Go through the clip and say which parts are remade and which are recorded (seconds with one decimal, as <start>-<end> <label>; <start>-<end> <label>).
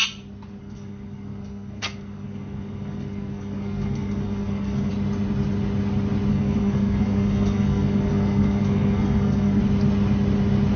0.0-0.6 recorded; 0.6-4.9 remade; 4.9-6.3 recorded; 6.3-9.6 remade; 9.6-10.8 recorded